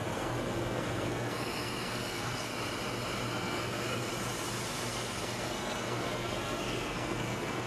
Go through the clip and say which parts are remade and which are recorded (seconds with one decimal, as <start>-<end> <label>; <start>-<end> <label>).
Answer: 0.0-2.5 remade; 2.5-3.3 recorded; 3.3-4.1 remade; 4.1-4.9 recorded; 4.9-7.7 remade